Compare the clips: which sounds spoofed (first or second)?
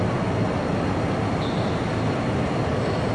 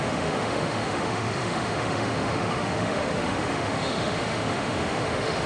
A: second